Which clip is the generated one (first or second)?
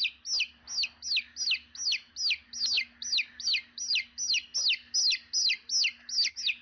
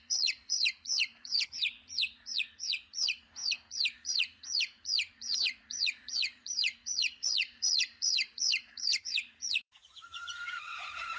second